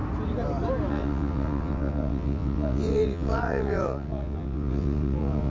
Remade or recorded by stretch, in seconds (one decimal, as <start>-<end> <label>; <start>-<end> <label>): 0.0-0.9 recorded; 0.9-5.5 remade